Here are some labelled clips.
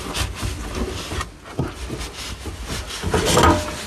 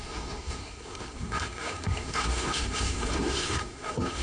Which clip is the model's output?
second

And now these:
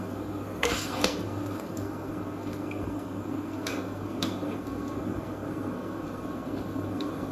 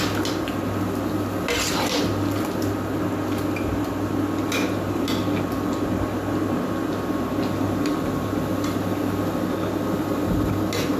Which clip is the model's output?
first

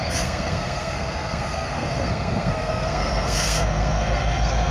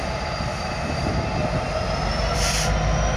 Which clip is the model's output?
first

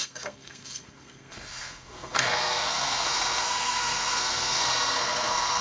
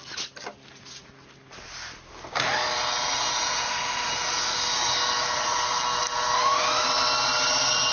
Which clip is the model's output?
first